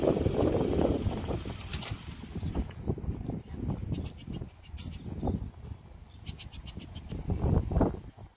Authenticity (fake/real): real